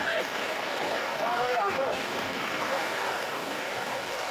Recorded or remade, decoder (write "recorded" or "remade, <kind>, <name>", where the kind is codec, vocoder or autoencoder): remade, codec, DAC